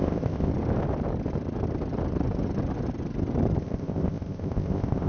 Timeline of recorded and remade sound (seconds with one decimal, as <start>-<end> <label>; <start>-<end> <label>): 0.0-0.5 remade; 0.5-3.6 recorded; 3.6-5.1 remade